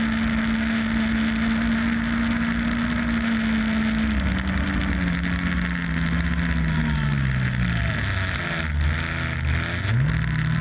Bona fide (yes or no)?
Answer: yes